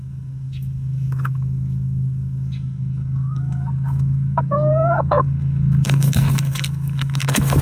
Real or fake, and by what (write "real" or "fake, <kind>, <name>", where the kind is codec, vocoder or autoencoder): fake, codec, SNAC